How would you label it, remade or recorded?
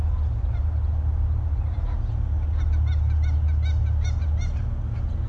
recorded